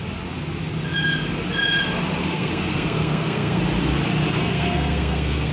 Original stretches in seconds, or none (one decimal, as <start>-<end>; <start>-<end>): 0.0-2.2; 3.6-4.4